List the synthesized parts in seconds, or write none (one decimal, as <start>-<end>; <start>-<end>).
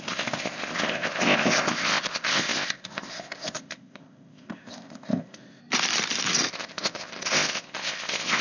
0.0-5.6; 6.5-8.4